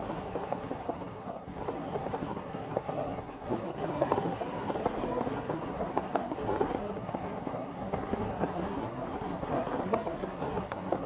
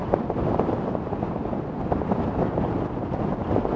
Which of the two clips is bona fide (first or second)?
second